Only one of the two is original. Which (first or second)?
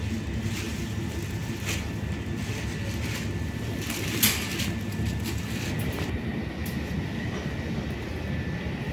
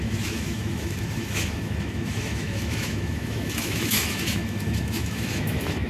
first